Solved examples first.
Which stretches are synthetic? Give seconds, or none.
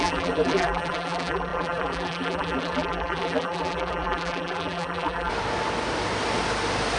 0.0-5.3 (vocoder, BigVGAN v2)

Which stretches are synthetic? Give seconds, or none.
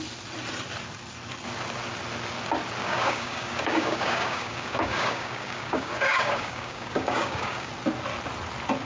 2.8-7.7 (codec, DAC)